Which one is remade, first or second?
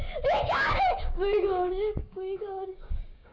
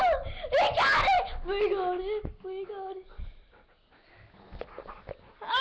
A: first